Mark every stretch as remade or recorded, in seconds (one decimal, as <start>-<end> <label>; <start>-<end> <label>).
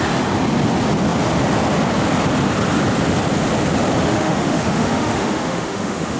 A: 0.0-4.0 recorded; 4.0-6.2 remade